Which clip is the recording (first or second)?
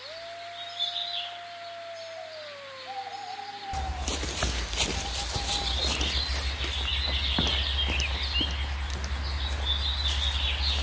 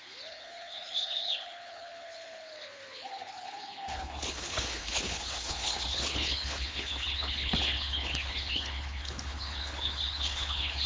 first